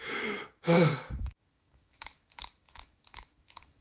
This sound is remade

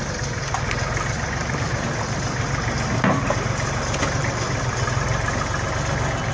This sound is recorded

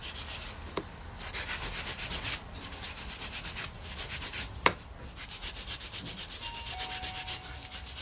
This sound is recorded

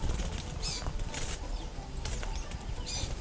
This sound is recorded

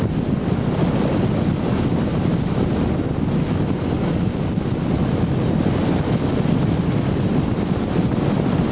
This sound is recorded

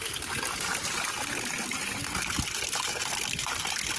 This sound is recorded